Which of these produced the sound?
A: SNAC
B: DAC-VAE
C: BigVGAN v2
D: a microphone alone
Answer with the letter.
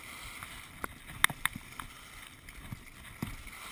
D